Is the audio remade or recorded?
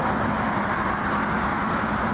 recorded